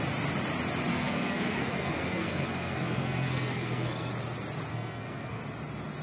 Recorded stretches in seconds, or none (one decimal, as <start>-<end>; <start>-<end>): 0.0-0.9; 4.1-4.7; 5.4-6.0